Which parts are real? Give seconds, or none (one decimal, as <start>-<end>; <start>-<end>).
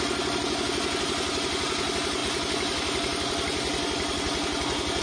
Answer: 0.0-5.0